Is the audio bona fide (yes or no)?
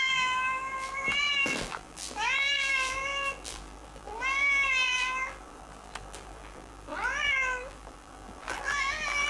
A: no